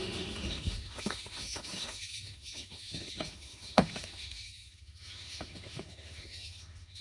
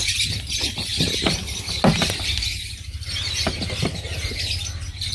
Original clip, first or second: second